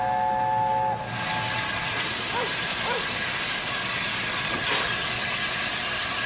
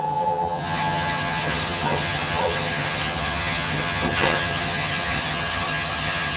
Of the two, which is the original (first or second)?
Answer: first